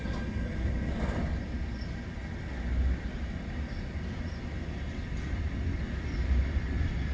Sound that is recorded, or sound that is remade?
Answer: recorded